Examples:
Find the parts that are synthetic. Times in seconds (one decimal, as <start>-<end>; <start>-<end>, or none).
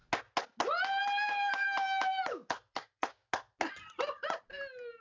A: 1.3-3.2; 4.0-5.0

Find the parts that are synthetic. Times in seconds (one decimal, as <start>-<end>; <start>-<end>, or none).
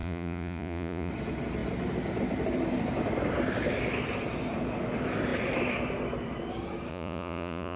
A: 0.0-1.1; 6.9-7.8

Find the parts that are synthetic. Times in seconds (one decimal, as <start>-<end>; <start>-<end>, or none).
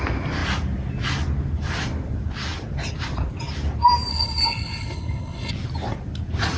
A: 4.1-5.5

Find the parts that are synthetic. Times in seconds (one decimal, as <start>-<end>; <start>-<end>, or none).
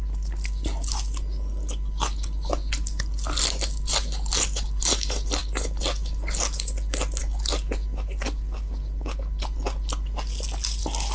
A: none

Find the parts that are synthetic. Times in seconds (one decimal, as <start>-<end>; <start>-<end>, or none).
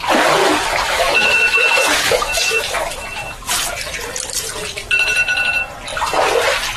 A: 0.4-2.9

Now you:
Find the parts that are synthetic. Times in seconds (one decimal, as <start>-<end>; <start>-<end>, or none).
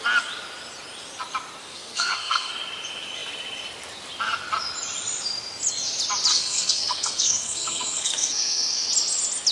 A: 1.6-2.5; 6.3-8.9